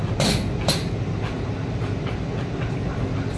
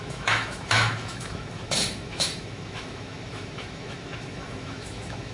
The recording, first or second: first